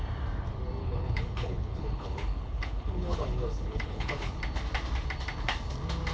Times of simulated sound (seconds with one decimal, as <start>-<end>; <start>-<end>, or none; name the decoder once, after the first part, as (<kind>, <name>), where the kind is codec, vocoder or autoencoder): 0.8-4.4 (codec, HILCodec)